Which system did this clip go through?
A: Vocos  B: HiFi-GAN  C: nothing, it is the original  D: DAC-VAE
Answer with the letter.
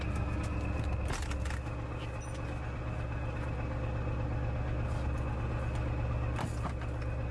C